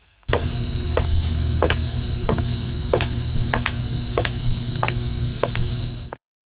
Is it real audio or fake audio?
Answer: fake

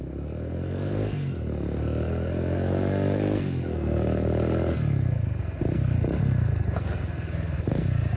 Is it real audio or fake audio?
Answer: fake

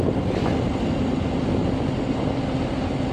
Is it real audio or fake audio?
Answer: real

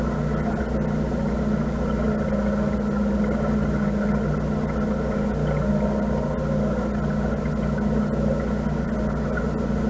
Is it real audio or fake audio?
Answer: real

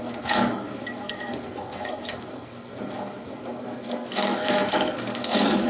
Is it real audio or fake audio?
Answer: fake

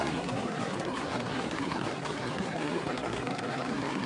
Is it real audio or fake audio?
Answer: fake